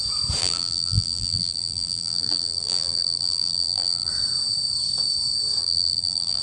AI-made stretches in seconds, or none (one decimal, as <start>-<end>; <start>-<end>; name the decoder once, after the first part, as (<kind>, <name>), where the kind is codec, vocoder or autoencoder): 0.4-4.1 (vocoder, BigVGAN v2); 5.6-6.4